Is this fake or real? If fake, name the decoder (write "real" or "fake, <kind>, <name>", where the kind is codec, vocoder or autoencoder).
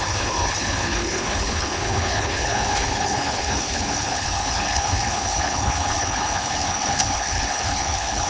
fake, codec, HILCodec